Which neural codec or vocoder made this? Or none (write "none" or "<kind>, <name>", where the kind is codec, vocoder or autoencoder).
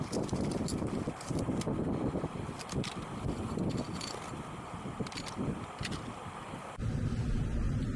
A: none